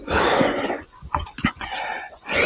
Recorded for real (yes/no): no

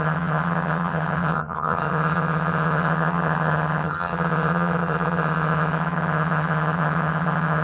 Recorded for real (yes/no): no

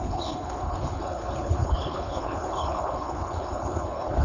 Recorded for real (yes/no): no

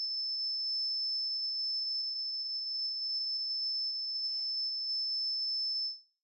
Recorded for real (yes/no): no